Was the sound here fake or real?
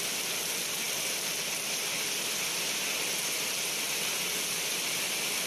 real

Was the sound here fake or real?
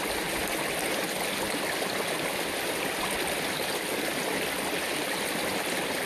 real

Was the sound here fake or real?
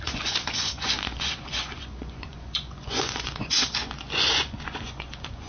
fake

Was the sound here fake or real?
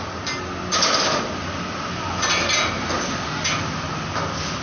real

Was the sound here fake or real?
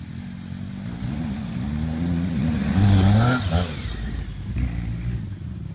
real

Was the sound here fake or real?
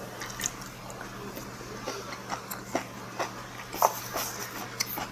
real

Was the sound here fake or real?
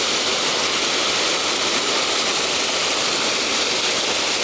real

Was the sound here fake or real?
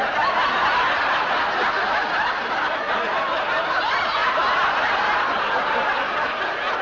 real